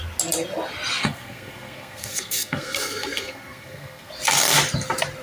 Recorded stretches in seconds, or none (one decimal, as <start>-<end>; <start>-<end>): 0.0-1.0; 4.1-5.2